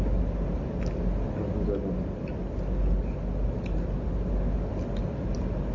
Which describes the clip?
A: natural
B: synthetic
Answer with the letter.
A